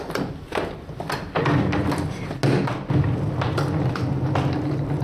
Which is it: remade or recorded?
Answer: recorded